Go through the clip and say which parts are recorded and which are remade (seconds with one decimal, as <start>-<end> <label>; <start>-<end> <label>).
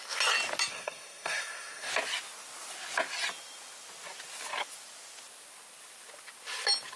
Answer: 0.0-0.7 recorded; 0.7-1.9 remade; 1.9-7.0 recorded